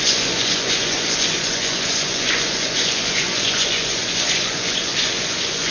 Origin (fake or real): fake